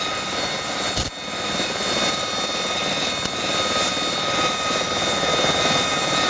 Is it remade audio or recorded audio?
recorded